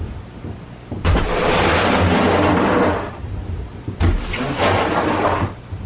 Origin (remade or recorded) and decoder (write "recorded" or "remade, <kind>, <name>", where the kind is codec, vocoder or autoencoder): recorded